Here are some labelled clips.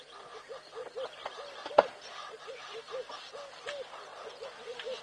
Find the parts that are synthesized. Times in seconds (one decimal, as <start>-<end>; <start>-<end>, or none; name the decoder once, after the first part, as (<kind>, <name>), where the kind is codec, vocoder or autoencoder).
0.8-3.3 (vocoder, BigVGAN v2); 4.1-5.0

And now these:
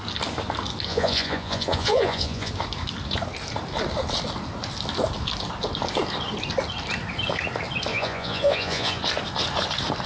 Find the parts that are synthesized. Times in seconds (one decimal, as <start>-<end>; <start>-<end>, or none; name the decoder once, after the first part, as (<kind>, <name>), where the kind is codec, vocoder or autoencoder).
0.9-2.5 (vocoder, Vocos); 7.9-9.0

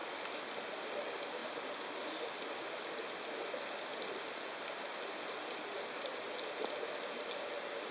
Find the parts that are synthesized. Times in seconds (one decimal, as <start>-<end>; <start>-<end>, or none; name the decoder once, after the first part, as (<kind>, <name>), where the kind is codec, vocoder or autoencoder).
0.9-1.4 (vocoder, BigVGAN v2); 5.5-6.1; 7.1-7.9

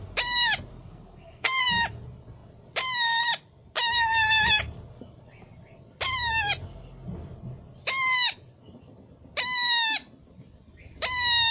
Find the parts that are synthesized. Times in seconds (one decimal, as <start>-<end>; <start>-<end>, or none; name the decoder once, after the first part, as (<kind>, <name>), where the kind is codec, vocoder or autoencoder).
0.7-1.6 (codec, SNAC)

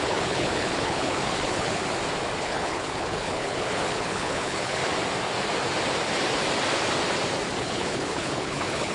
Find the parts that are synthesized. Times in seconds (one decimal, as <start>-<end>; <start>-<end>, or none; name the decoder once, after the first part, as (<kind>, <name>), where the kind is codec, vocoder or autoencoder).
0.0-1.8 (codec, HILCodec); 2.4-4.8; 7.6-8.9

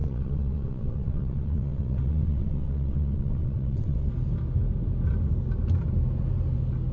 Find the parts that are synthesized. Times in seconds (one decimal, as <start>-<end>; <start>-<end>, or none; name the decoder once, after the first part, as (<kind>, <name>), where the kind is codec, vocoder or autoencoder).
0.0-4.1 (vocoder, WaveNeXt)